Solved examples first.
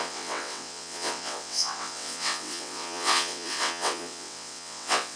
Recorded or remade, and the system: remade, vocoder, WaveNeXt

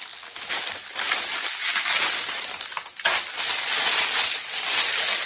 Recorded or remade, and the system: recorded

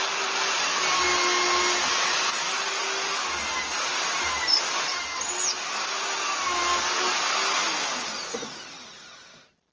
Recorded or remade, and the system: recorded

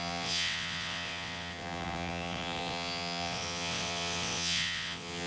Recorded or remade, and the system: remade, vocoder, WaveNeXt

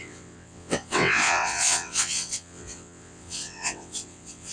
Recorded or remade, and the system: remade, vocoder, WaveNeXt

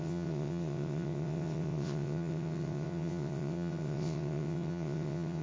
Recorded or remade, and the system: remade, vocoder, WaveNeXt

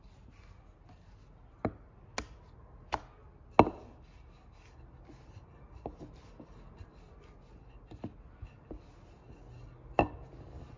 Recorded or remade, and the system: recorded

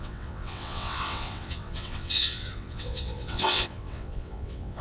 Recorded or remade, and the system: remade, vocoder, WaveNeXt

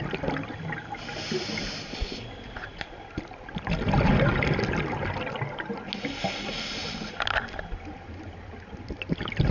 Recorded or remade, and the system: recorded